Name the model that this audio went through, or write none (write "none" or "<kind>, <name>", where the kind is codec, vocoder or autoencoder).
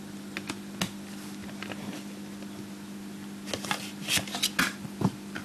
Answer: none